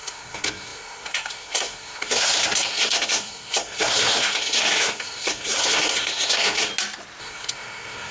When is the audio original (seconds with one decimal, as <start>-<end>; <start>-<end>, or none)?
6.7-7.2